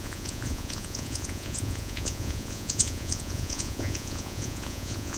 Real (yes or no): no